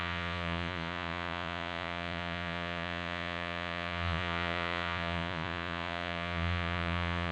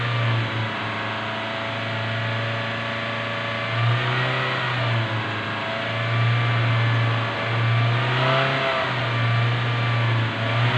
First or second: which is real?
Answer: second